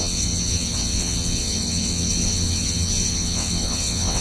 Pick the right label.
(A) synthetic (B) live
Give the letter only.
A